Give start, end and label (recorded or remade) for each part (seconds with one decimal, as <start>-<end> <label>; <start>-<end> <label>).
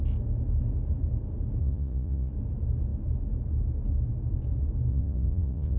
0.0-1.6 recorded; 1.6-2.3 remade; 2.3-4.9 recorded; 4.9-5.8 remade